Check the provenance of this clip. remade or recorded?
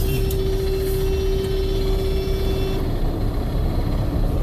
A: recorded